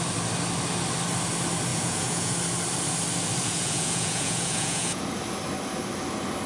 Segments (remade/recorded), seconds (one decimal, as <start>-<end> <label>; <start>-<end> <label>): 0.0-1.7 recorded; 1.7-2.3 remade; 2.3-3.4 recorded; 3.4-5.0 remade; 5.0-6.5 recorded